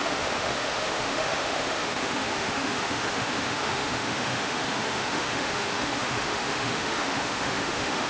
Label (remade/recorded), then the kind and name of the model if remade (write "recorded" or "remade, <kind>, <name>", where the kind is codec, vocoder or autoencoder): remade, autoencoder, DAC-VAE